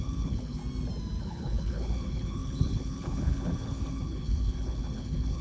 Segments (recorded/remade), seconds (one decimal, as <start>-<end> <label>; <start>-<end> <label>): 0.0-0.6 remade; 0.6-1.2 recorded; 1.2-5.4 remade